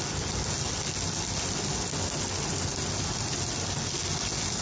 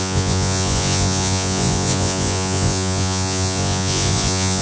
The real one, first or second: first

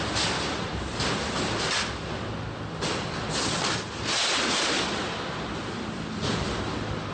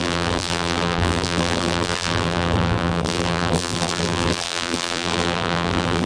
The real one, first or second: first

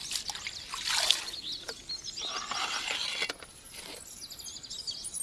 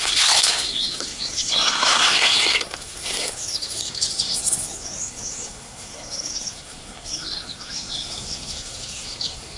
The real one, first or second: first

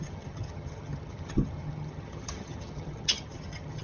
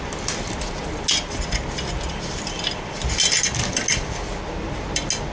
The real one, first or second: second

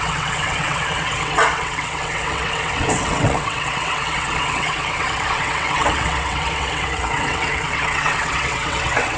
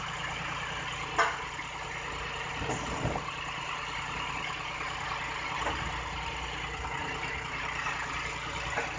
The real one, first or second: second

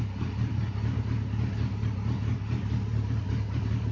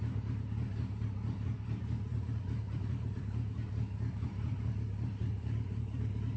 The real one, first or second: first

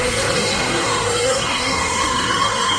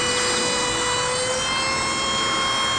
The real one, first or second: second